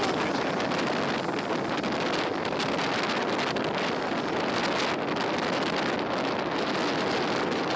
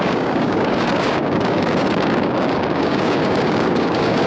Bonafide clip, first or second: first